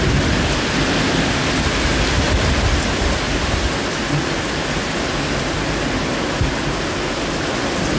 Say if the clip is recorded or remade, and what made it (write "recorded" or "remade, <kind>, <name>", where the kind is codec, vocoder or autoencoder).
recorded